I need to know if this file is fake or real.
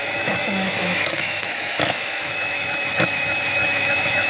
fake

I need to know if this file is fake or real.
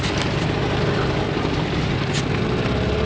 real